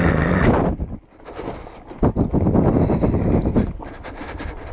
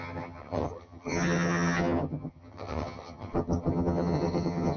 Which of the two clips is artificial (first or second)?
second